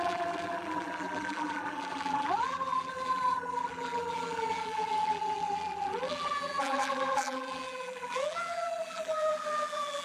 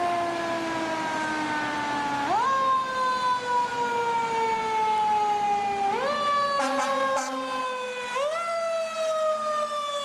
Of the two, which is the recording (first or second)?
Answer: second